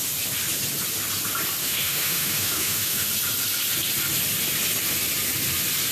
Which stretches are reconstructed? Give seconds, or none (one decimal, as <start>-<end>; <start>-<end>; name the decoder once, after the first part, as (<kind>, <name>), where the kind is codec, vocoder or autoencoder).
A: 1.6-3.1 (autoencoder, DAC-VAE)

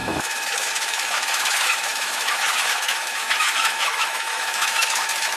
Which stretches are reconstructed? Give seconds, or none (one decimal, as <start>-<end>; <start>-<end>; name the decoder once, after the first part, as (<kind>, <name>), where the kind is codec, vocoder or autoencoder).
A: 0.0-5.4 (autoencoder, DAC-VAE)